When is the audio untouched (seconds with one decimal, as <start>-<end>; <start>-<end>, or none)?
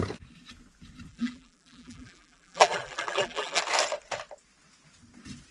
0.0-1.1; 3.6-5.5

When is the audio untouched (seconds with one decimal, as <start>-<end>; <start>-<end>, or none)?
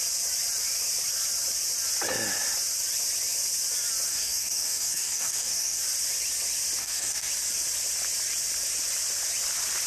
0.0-4.1; 5.8-6.8; 7.3-9.9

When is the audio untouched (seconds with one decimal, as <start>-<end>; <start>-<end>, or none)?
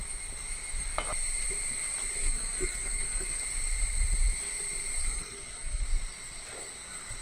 0.0-2.2; 3.4-5.0; 5.8-7.2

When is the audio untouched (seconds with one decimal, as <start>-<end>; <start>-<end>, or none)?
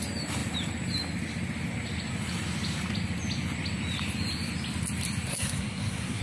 0.0-5.3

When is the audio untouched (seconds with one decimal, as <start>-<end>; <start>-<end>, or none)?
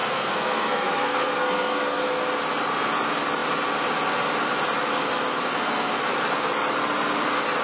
2.1-7.6